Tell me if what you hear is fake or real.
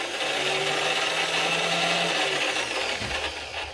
real